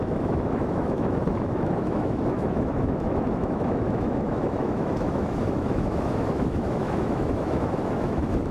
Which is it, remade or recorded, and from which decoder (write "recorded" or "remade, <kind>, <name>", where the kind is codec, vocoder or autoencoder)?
remade, autoencoder, DAC-VAE